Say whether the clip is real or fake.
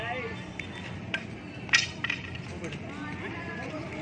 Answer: fake